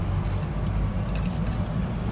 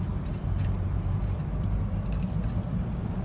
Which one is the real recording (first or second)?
first